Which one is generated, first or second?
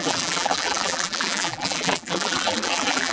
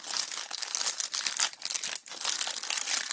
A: first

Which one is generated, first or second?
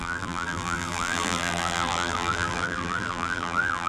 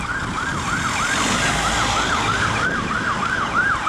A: first